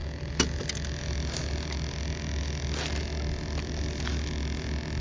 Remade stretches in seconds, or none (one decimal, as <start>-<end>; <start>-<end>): none